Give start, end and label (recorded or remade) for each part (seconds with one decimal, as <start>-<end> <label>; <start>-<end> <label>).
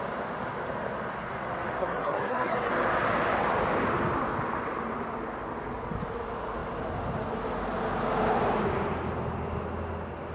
0.0-1.8 recorded; 1.8-2.7 remade; 2.7-10.3 recorded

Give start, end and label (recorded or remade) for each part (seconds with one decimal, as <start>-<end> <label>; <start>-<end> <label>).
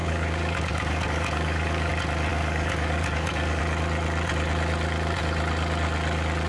0.0-1.9 remade; 1.9-2.3 recorded; 2.3-3.6 remade; 3.6-6.5 recorded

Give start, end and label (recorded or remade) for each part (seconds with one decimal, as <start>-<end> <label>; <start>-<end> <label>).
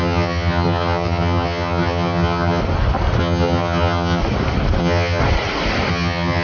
0.0-2.6 remade; 2.6-3.2 recorded; 3.2-4.2 remade; 4.2-4.8 recorded; 4.8-5.2 remade; 5.2-5.9 recorded; 5.9-6.4 remade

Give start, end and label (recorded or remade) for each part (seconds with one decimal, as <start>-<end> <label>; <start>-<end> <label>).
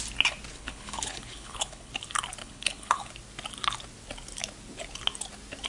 0.0-0.5 recorded; 0.5-1.9 remade; 1.9-2.4 recorded; 2.4-3.1 remade; 3.1-5.7 recorded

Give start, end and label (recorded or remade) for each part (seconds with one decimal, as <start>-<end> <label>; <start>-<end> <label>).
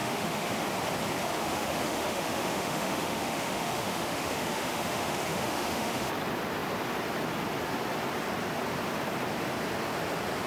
0.0-0.6 remade; 0.6-1.3 recorded; 1.3-6.1 remade; 6.1-10.5 recorded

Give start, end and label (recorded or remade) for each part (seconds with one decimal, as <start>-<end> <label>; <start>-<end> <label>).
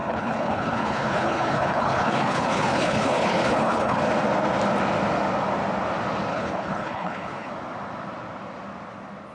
0.0-4.0 remade; 4.0-6.3 recorded; 6.3-7.5 remade; 7.5-9.3 recorded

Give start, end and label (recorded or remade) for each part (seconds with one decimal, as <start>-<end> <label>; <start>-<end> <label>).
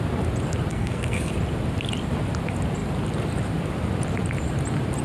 0.0-0.7 recorded; 0.7-1.3 remade; 1.3-5.0 recorded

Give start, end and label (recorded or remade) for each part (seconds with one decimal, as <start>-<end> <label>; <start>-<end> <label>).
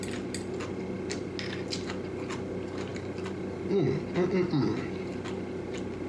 0.0-6.1 recorded